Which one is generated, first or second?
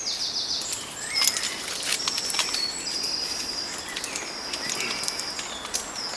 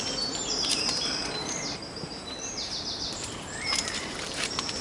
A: second